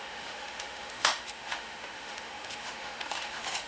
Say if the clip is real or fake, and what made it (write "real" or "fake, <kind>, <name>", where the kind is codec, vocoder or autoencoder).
fake, autoencoder, DAC-VAE